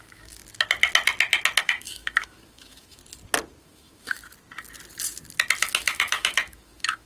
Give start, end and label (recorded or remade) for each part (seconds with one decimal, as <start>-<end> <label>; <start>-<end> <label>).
0.0-0.4 remade; 0.4-1.6 recorded; 1.6-3.0 remade; 3.0-3.6 recorded; 3.6-4.2 remade; 4.2-5.6 recorded; 5.6-7.1 remade